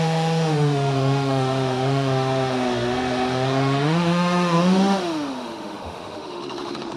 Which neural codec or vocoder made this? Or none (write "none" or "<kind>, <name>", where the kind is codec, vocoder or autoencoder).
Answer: autoencoder, DAC-VAE